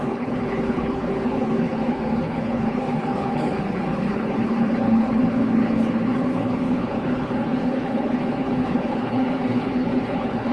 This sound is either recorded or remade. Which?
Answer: remade